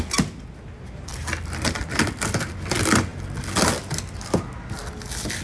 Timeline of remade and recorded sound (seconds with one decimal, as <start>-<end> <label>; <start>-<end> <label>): 0.0-5.4 recorded